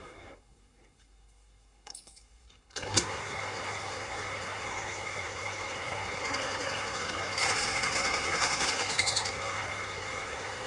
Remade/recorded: remade